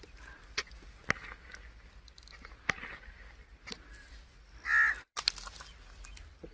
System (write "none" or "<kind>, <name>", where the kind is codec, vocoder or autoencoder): none